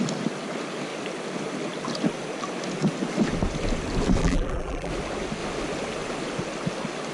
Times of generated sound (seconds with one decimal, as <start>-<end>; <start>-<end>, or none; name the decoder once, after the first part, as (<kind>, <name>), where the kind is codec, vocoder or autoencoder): 4.2-4.9 (vocoder, BigVGAN v2)

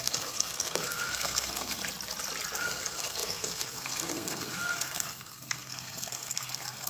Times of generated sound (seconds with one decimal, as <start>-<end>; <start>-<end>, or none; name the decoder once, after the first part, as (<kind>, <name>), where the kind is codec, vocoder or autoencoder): 0.0-1.8 (codec, SNAC); 2.6-6.9

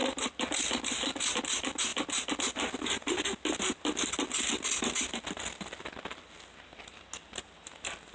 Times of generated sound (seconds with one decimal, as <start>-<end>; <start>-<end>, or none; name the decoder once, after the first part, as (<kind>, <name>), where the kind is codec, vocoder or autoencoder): none

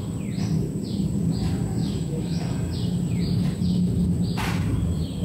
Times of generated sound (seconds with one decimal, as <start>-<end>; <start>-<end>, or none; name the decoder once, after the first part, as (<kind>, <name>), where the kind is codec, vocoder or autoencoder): 1.8-2.4 (autoencoder, DAC-VAE)

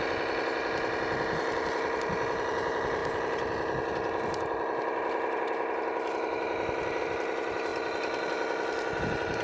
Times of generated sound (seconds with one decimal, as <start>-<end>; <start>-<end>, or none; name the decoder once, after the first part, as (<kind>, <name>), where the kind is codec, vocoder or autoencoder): none

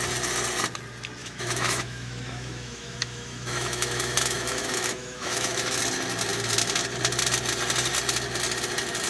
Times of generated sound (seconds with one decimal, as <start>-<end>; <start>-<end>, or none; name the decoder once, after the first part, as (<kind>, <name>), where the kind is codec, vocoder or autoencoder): 1.2-5.8 (autoencoder, DAC-VAE)

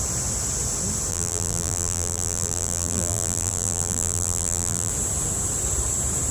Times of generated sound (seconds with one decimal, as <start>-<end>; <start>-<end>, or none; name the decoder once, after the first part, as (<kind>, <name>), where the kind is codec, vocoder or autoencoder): 1.1-4.9 (vocoder, BigVGAN v2)